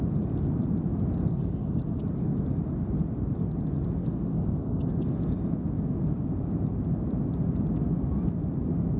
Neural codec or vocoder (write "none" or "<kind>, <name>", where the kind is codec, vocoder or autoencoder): none